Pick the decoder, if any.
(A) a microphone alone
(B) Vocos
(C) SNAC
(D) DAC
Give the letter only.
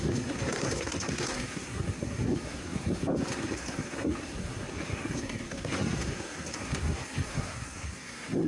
C